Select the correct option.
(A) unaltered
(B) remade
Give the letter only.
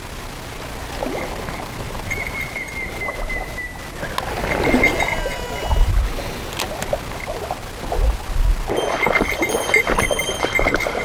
A